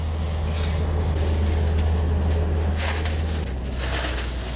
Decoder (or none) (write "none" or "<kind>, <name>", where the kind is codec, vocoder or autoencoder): none